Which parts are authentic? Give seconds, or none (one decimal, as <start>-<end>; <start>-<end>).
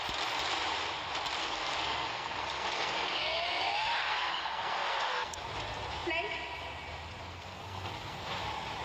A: 0.0-1.4; 5.5-7.2; 8.4-8.8